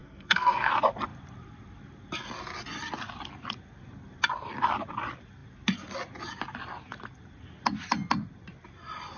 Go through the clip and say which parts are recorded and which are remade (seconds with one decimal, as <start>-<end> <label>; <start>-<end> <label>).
0.0-0.7 remade; 0.7-9.2 recorded